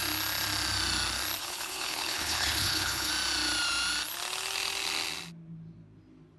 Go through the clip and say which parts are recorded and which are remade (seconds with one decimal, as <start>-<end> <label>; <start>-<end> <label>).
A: 0.0-1.4 recorded; 1.4-3.1 remade; 3.1-6.4 recorded